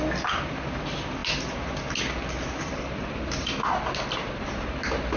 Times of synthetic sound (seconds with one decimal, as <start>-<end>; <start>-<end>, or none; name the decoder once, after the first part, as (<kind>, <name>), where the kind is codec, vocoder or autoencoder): none